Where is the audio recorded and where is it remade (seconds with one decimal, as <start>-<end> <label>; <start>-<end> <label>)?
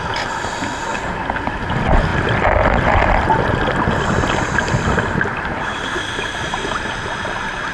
0.0-7.7 recorded